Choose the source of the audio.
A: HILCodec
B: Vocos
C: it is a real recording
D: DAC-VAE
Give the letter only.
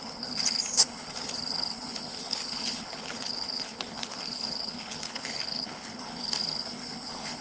A